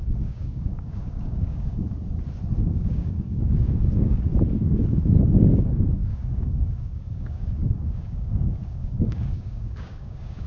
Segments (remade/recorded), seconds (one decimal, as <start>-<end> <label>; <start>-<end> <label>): 0.0-1.8 remade; 1.8-2.6 recorded; 2.6-4.3 remade; 4.3-5.2 recorded; 5.2-10.5 remade